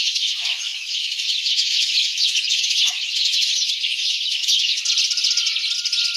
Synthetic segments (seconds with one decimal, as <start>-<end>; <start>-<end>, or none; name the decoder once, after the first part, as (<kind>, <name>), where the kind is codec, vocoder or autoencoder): 0.0-4.8 (autoencoder, DAC-VAE)